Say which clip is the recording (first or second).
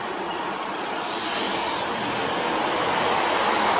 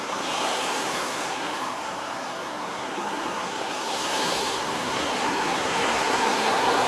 first